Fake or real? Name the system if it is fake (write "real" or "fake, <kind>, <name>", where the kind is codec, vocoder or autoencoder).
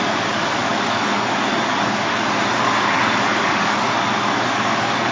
fake, codec, DAC